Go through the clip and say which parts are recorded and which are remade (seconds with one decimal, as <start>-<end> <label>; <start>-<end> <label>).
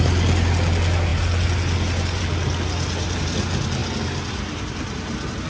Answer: 0.0-5.5 recorded